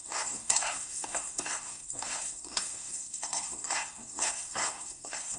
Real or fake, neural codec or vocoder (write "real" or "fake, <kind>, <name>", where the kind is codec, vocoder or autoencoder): fake, codec, SNAC